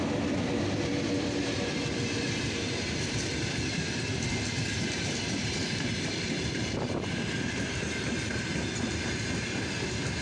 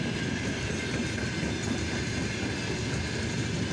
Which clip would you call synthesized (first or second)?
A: first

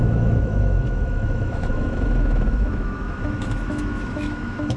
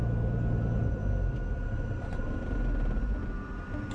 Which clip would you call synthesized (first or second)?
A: first